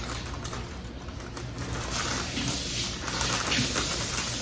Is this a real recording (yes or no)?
yes